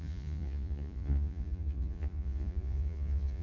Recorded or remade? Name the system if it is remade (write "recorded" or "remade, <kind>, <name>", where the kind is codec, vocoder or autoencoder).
remade, vocoder, Vocos